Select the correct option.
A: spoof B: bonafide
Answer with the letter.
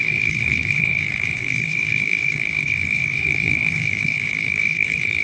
A